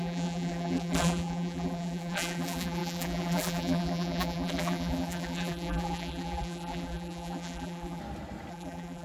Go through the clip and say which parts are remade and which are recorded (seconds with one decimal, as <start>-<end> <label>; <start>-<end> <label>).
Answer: 0.0-8.0 remade; 8.0-8.5 recorded; 8.5-9.0 remade